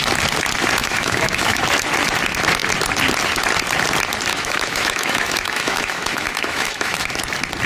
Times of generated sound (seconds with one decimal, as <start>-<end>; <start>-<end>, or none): 0.8-1.6; 4.3-7.1